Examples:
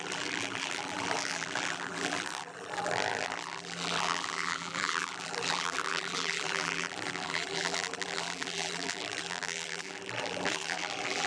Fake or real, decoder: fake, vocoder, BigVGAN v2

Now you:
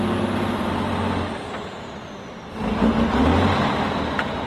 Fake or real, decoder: real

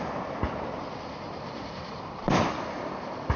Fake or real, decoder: real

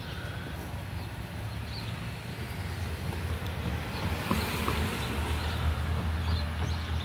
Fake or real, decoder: real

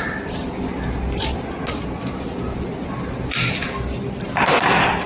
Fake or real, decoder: real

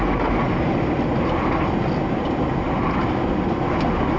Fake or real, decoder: real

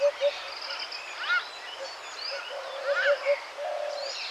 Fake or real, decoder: real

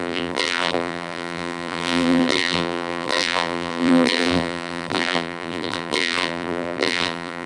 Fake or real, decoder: fake, vocoder, BigVGAN v2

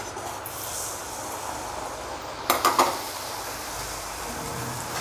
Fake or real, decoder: real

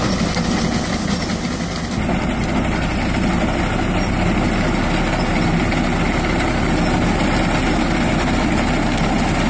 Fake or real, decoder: real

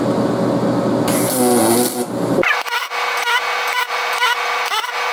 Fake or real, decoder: real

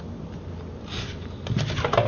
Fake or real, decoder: real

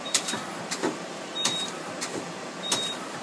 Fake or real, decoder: fake, vocoder, BigVGAN v2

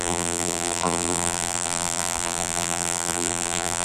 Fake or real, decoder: fake, vocoder, BigVGAN v2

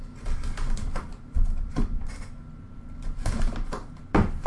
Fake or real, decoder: real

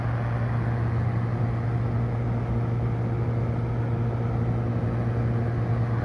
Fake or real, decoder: real